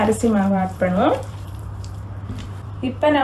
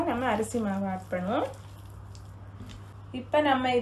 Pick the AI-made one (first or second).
first